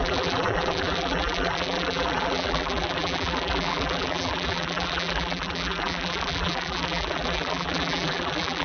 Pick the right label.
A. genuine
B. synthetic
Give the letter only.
B